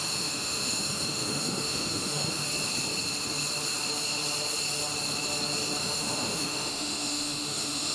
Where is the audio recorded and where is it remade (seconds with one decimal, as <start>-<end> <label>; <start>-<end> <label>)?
0.0-2.4 remade; 2.4-5.8 recorded; 5.8-7.9 remade